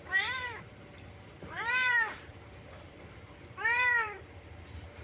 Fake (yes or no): yes